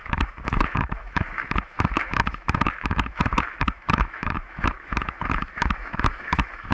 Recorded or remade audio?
remade